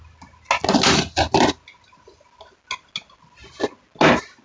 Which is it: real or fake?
real